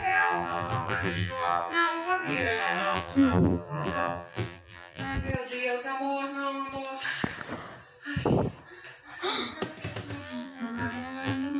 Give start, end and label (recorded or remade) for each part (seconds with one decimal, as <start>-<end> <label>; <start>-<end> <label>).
0.0-5.3 remade; 5.3-10.2 recorded; 10.2-11.6 remade